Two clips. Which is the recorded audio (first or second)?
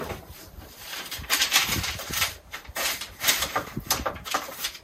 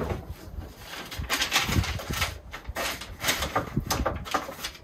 second